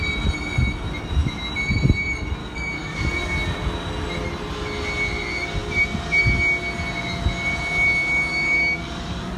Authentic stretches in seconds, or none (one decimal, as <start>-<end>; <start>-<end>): 0.0-2.4; 3.1-8.3